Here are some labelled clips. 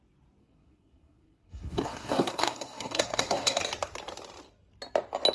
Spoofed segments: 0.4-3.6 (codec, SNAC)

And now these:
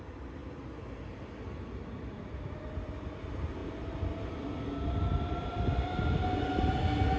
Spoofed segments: none

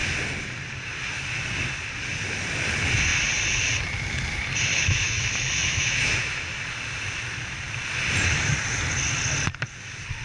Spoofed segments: 4.7-6.6 (autoencoder, DAC-VAE)

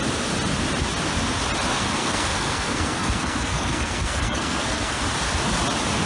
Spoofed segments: 1.7-5.0 (codec, SNAC)